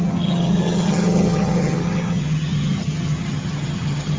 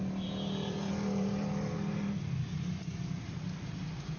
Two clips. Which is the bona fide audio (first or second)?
second